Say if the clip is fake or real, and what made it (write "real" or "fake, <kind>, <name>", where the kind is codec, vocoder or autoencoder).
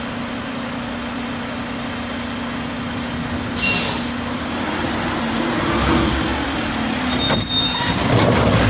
real